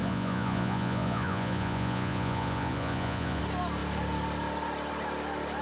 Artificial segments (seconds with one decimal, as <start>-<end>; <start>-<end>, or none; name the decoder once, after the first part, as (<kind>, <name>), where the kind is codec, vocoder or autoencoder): 0.0-3.4 (vocoder, Vocos)